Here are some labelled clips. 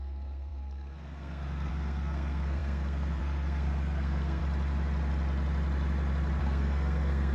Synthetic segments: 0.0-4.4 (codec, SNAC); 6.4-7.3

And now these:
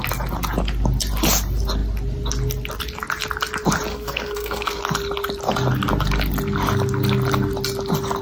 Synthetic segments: 3.9-4.8 (codec, SNAC)

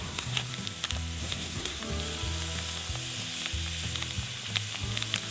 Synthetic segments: 0.0-0.5 (codec, SNAC); 1.2-1.8

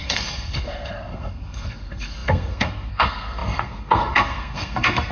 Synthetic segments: 0.0-5.1 (codec, SNAC)

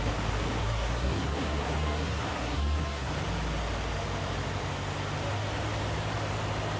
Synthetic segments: 0.6-3.1 (codec, SNAC)